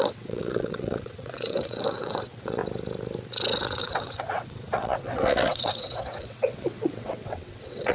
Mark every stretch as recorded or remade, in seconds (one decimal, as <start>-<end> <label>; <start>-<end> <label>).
0.0-2.6 remade; 2.6-3.8 recorded; 3.8-7.9 remade